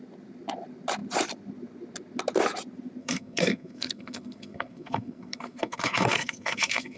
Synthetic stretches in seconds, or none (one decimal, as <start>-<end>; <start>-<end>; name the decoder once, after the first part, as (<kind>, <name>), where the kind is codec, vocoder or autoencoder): 3.0-7.0 (codec, SNAC)